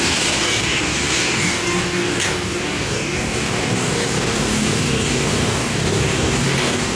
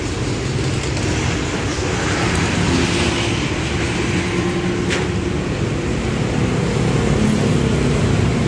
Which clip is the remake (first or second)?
first